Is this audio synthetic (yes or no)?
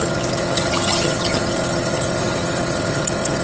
yes